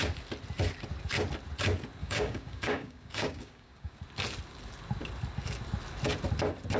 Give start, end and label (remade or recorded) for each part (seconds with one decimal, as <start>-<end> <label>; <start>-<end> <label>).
0.0-2.0 recorded; 2.0-4.0 remade; 4.0-6.8 recorded

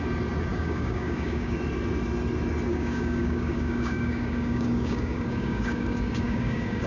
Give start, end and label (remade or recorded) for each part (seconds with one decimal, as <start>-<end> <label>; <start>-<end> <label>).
0.0-0.5 recorded; 0.5-1.6 remade; 1.6-2.7 recorded; 2.7-6.9 remade

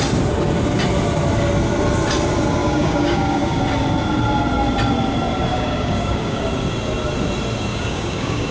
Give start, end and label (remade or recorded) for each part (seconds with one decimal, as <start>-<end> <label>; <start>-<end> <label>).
0.0-2.6 recorded; 2.6-3.6 remade; 3.6-5.5 recorded; 5.5-6.5 remade; 6.5-7.7 recorded; 7.7-8.5 remade